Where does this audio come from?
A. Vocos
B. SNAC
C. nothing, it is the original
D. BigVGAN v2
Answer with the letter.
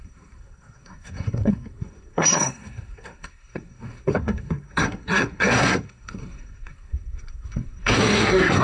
B